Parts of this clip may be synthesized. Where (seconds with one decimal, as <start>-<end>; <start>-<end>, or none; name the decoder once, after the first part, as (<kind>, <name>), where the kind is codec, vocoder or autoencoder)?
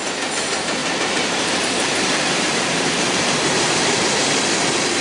0.8-3.8 (vocoder, BigVGAN v2)